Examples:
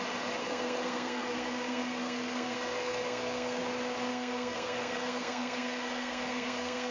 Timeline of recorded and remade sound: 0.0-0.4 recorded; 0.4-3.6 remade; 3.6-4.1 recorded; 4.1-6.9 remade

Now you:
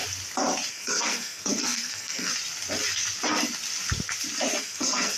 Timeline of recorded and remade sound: 0.0-0.7 recorded; 0.7-2.3 remade; 2.3-4.6 recorded; 4.6-5.2 remade